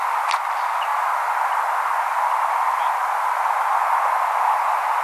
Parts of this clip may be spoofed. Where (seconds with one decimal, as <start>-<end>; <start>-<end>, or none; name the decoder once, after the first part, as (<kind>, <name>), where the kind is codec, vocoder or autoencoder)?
none